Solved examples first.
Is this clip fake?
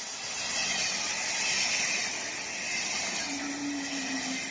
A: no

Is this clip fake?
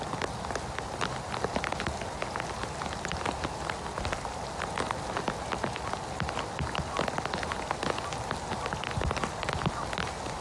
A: no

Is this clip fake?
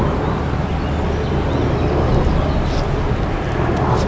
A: no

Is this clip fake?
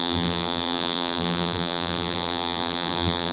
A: yes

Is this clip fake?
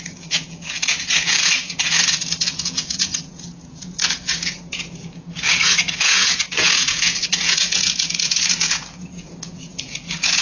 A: yes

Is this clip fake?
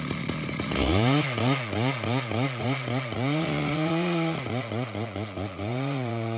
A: yes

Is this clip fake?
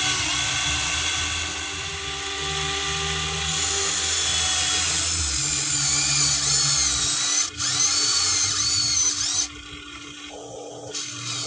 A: no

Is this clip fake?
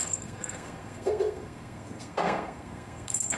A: yes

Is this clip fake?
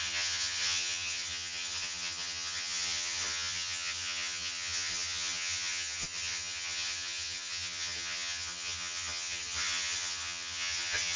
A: yes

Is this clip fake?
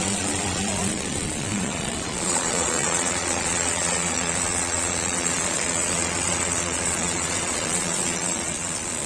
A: yes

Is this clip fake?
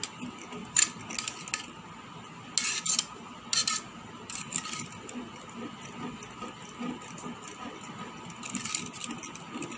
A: no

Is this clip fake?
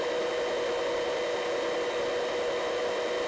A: no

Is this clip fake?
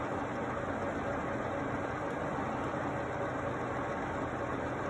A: no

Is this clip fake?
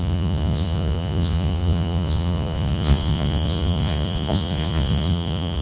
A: yes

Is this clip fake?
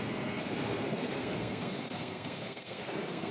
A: yes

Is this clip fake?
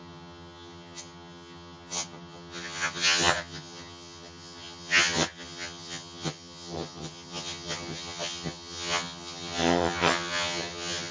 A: yes